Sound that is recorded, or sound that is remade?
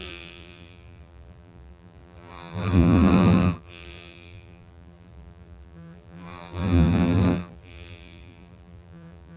remade